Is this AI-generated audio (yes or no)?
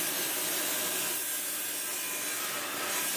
no